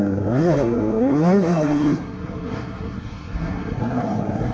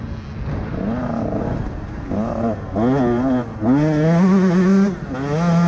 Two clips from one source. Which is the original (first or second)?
second